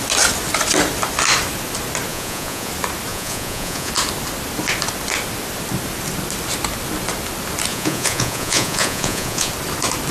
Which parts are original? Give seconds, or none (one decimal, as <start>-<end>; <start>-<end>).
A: 0.0-2.1; 2.7-3.1; 3.9-7.7; 9.5-10.1